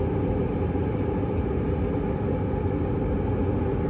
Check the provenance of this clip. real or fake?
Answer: real